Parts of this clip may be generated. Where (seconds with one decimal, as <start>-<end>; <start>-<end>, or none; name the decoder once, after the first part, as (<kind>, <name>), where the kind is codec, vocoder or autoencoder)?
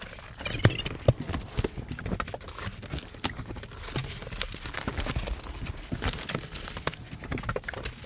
none